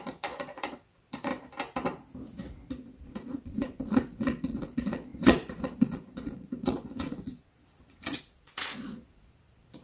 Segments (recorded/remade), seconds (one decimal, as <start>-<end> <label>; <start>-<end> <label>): 0.0-1.3 remade; 1.3-3.0 recorded; 3.0-9.8 remade